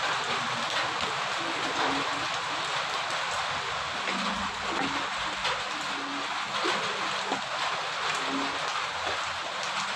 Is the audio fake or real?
real